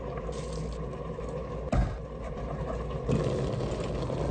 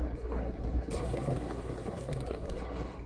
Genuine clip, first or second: first